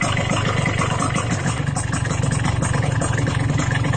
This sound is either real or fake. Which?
real